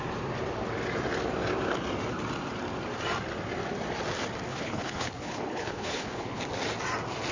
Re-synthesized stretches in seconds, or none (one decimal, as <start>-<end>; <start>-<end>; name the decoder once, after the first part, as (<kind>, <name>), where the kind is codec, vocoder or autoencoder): 4.5-6.4 (codec, HILCodec)